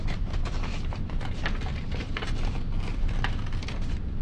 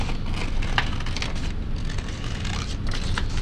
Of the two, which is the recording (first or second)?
second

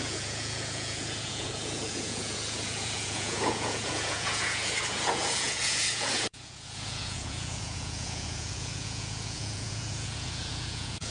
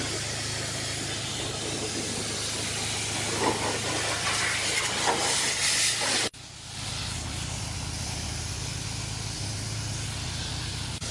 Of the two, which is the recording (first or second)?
second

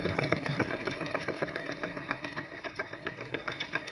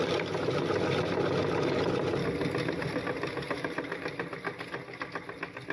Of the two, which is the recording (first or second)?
second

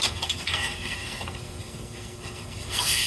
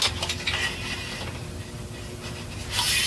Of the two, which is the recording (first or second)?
second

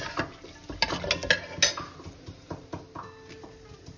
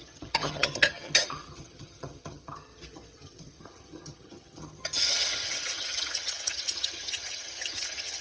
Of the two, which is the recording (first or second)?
first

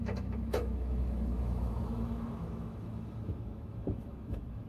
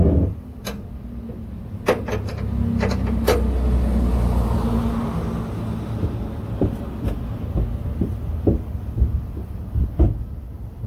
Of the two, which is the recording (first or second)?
second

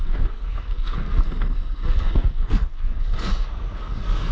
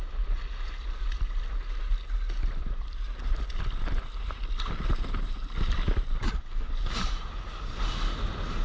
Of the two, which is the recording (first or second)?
second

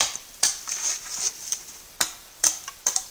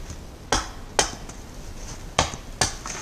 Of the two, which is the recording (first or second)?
second